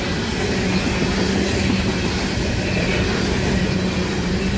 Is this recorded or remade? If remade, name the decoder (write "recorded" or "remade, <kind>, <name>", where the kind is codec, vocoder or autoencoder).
recorded